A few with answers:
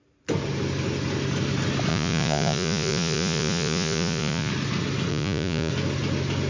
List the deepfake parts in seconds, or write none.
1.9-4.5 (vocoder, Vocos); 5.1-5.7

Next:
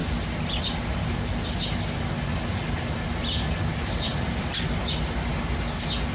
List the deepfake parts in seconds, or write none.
3.7-4.5 (vocoder, BigVGAN v2)

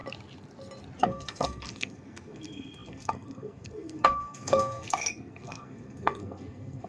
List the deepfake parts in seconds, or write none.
1.0-6.9 (codec, SNAC)

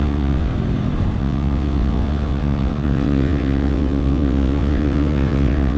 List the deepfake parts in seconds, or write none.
0.0-0.5 (vocoder, WaveNeXt); 1.2-5.8

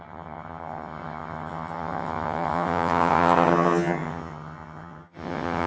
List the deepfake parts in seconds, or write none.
0.0-5.7 (vocoder, HiFi-GAN)

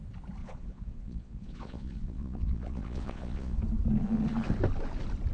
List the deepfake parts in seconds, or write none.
0.4-3.6 (vocoder, Vocos)

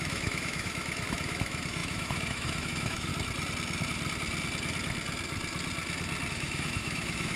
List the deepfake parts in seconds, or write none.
0.0-3.1 (autoencoder, DAC-VAE); 6.3-7.4

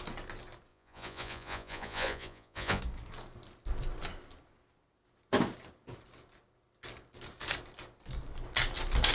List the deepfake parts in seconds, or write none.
0.7-2.8 (vocoder, Vocos)